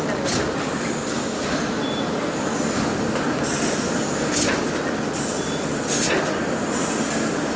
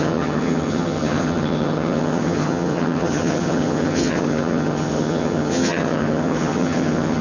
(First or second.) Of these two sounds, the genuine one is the first